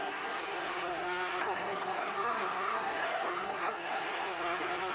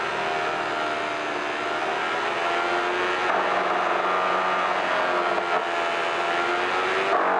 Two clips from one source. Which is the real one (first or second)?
second